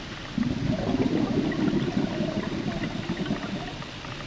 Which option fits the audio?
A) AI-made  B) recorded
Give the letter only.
B